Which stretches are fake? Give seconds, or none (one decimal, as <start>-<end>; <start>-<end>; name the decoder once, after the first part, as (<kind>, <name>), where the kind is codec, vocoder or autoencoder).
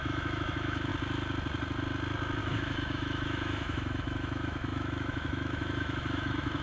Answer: 0.0-0.9 (autoencoder, DAC-VAE); 2.4-6.6